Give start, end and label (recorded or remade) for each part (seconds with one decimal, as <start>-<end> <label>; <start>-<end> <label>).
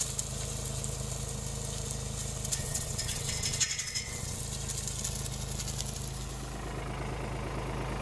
0.0-2.6 recorded; 2.6-4.4 remade; 4.4-8.0 recorded